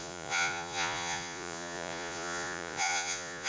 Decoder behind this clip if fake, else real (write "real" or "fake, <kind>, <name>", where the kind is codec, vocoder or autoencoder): fake, vocoder, Vocos